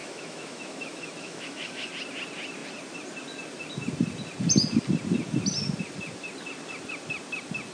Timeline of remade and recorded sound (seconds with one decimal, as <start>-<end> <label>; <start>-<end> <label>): 0.0-1.9 remade; 1.9-7.7 recorded